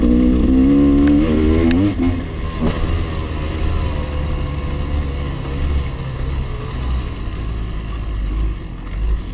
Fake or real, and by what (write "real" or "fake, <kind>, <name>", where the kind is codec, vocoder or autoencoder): real